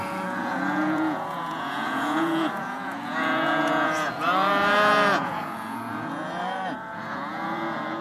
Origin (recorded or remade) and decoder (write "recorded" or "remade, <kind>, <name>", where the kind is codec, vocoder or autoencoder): remade, vocoder, Vocos